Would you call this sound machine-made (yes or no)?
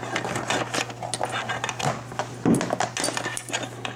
no